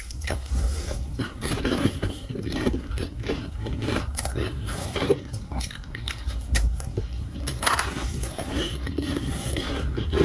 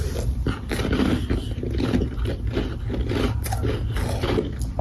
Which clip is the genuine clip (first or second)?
second